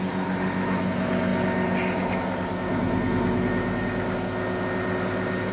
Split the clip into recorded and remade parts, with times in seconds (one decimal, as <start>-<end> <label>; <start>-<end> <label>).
0.0-5.5 recorded